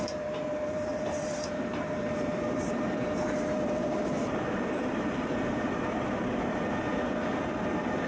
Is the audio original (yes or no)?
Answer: no